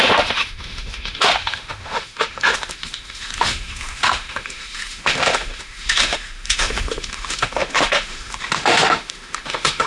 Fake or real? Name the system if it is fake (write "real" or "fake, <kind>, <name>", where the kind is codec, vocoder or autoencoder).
fake, autoencoder, DAC-VAE